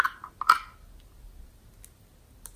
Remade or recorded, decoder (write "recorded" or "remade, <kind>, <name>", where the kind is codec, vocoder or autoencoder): recorded